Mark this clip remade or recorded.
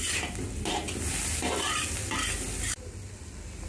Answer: recorded